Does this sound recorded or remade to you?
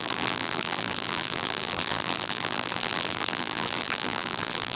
remade